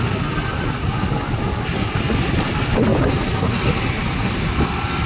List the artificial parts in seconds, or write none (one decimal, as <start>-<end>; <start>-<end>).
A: none